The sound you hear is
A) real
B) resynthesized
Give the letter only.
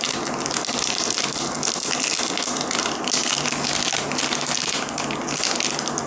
A